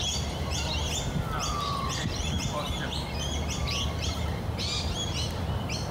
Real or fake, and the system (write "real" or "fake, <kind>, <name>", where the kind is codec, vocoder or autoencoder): real